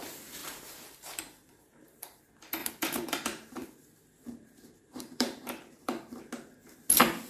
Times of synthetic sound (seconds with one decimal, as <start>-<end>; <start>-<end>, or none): 0.4-2.2; 2.6-6.2